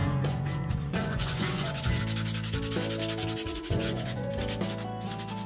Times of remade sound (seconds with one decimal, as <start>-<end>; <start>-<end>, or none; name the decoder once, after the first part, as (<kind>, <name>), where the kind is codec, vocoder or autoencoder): 0.0-2.0 (vocoder, Vocos); 3.5-4.3